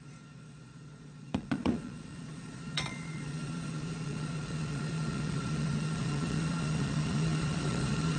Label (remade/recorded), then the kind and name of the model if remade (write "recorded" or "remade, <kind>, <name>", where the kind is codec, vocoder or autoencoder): remade, vocoder, Vocos